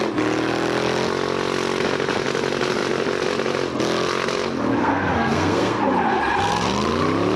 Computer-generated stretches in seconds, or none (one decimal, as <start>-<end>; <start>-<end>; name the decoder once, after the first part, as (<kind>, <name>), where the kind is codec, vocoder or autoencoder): 4.8-5.8 (codec, SNAC)

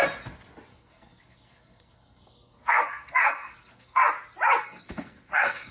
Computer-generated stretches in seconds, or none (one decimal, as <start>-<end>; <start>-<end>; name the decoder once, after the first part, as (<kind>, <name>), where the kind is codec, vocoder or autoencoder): 0.7-4.1 (codec, SNAC); 4.6-5.7

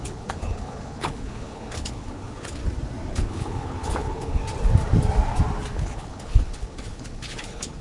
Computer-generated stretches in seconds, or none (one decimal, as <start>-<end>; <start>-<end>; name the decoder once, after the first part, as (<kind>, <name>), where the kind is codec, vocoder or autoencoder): 0.0-2.6 (codec, HILCodec); 3.1-4.4; 5.7-7.8

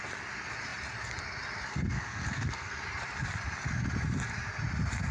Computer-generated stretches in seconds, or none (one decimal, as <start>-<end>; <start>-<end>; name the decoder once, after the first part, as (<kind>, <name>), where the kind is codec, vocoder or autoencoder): 1.7-2.7 (codec, SNAC)

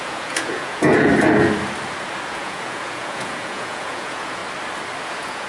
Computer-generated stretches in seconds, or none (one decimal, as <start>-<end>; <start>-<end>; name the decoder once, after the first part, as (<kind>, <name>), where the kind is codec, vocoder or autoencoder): 0.0-1.1 (vocoder, Vocos); 2.3-4.4; 5.0-5.5

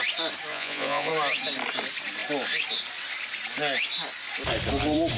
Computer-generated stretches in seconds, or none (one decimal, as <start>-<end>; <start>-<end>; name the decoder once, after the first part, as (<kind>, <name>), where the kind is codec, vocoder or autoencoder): 0.5-1.1 (vocoder, Vocos)